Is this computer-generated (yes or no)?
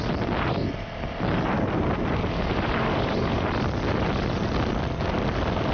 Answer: no